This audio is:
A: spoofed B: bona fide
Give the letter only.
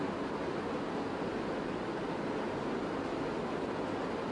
B